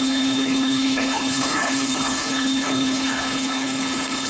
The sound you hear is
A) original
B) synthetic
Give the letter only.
B